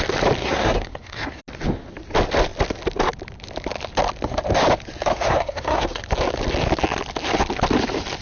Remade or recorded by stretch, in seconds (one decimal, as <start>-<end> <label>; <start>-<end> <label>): 0.0-0.4 recorded; 0.4-1.4 remade; 1.4-5.1 recorded; 5.1-6.0 remade; 6.0-8.2 recorded